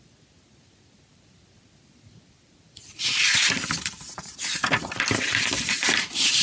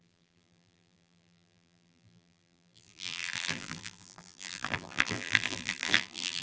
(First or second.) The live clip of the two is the first